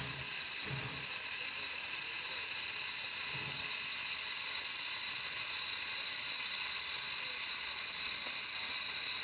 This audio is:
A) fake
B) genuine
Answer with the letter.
B